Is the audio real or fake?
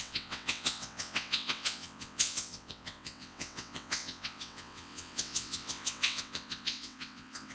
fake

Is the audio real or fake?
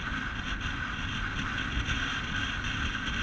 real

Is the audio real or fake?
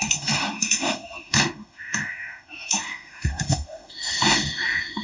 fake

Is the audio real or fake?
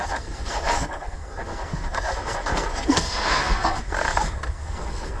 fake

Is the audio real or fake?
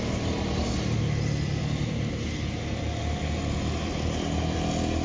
real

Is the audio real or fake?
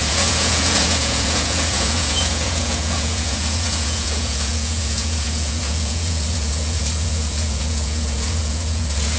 fake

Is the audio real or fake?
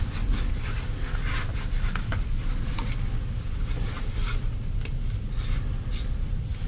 real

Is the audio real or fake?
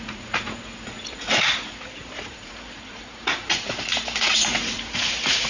fake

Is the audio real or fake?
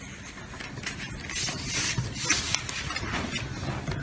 real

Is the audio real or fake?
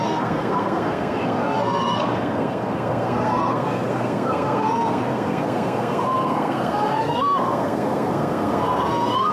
fake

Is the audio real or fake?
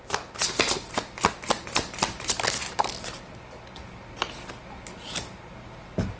real